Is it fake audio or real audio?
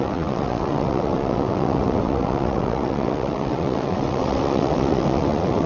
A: fake